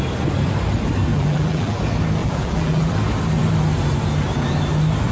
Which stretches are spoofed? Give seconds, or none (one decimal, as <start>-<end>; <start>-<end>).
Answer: 1.1-1.8; 2.2-2.9

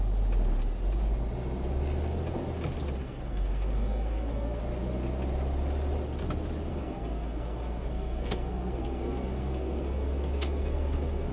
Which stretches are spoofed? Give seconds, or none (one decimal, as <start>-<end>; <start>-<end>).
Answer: 3.0-4.6; 6.7-11.3

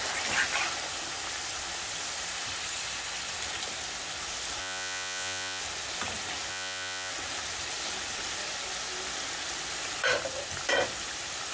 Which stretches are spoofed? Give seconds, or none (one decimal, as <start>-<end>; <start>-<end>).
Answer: 4.6-5.6; 6.5-7.1

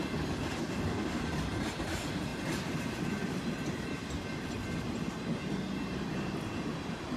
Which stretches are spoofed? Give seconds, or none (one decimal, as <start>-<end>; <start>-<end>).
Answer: 0.6-1.2

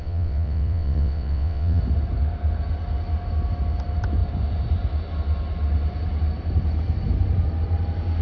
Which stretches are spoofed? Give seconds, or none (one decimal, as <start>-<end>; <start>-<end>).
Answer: 0.0-1.8

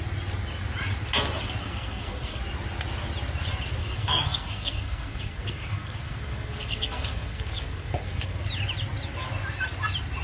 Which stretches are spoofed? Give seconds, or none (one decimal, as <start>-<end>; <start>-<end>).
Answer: 1.6-2.4; 3.8-8.5

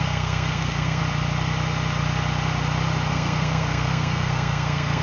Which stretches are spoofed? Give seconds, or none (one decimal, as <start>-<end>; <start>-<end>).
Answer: 0.0-1.0; 3.1-5.0

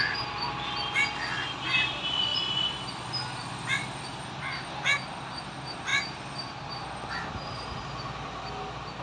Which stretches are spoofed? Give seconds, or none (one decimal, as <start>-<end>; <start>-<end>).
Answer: none